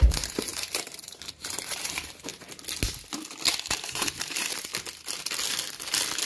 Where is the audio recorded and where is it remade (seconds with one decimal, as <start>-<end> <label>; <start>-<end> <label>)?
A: 0.0-2.3 remade; 2.3-3.6 recorded; 3.6-4.7 remade; 4.7-6.3 recorded